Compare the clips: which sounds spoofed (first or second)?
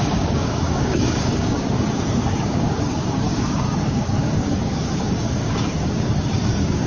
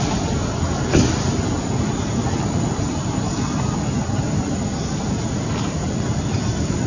first